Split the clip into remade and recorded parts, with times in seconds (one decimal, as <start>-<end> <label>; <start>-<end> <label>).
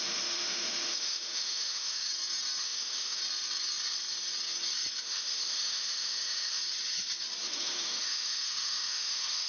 0.0-2.1 remade; 2.1-2.6 recorded; 2.6-3.2 remade; 3.2-5.0 recorded; 5.0-6.6 remade; 6.6-7.4 recorded; 7.4-9.5 remade